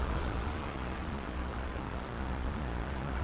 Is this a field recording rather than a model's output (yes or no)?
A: no